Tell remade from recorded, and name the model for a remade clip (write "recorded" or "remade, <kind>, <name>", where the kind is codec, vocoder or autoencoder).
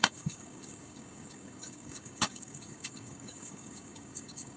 remade, codec, DAC